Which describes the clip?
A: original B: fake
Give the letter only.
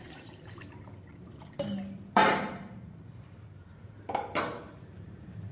B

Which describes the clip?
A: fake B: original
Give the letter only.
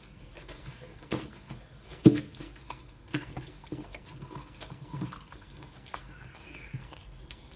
A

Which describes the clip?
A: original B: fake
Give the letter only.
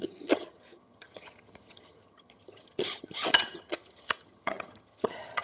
B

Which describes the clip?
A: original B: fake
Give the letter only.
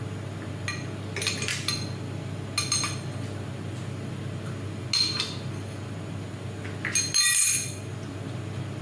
A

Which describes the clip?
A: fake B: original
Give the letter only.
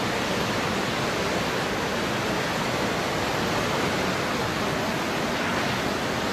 B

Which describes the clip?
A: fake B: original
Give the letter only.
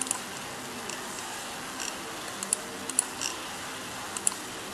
B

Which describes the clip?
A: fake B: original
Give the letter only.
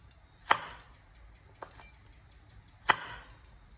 B